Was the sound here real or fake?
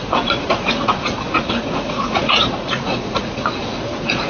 fake